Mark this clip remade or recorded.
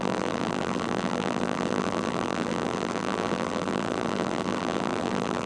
remade